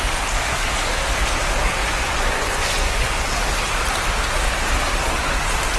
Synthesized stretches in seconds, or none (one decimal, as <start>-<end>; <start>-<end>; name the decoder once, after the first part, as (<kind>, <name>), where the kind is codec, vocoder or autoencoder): 1.8-3.3 (vocoder, Vocos)